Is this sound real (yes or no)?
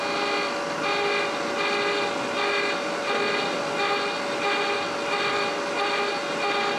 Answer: yes